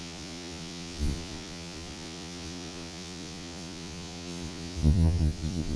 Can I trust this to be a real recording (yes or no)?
no